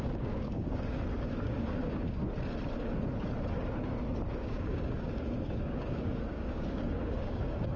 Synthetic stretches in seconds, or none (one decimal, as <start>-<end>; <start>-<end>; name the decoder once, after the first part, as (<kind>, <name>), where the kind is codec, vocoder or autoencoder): 0.0-2.2 (codec, DAC); 4.3-7.8